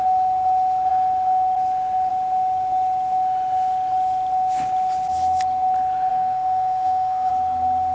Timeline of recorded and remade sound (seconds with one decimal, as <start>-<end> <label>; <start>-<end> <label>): 0.0-6.1 recorded; 6.1-7.3 remade; 7.3-7.9 recorded